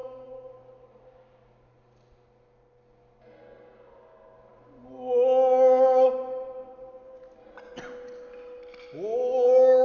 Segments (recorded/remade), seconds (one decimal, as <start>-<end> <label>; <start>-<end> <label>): 0.0-0.5 remade; 0.5-9.8 recorded